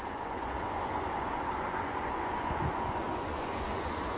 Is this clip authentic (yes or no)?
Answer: no